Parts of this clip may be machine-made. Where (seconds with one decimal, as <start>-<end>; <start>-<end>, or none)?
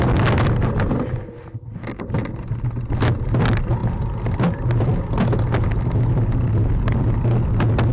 none